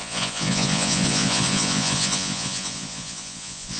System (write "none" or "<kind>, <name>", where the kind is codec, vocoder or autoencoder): vocoder, Vocos